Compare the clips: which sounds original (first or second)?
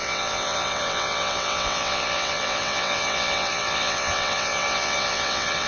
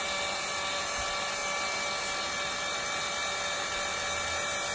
second